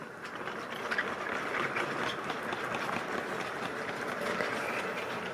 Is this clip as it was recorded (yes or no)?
yes